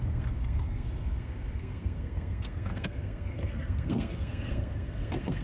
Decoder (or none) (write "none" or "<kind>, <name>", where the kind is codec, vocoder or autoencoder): codec, SNAC